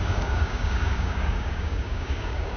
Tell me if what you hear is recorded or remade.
remade